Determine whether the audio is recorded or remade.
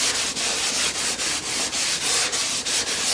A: recorded